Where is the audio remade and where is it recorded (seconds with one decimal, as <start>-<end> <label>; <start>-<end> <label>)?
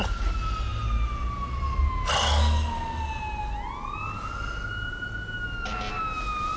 0.0-6.6 recorded